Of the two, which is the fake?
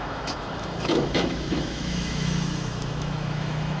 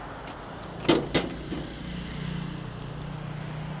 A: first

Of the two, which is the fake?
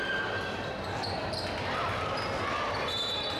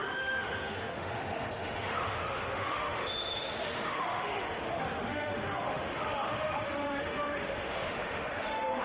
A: second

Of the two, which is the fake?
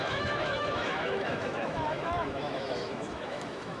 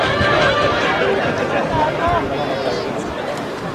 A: first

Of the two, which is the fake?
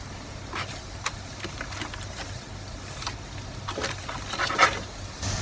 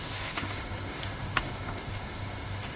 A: second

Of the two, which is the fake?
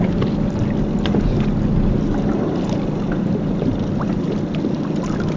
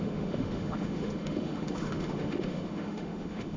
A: second